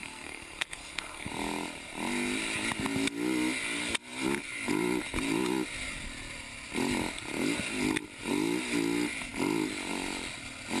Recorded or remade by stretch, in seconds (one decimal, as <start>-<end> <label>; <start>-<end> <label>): 0.0-1.3 remade; 1.3-10.8 recorded